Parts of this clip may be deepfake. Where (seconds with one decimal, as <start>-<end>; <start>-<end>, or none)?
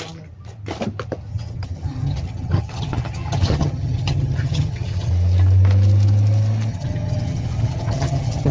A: 1.3-5.1; 6.7-8.5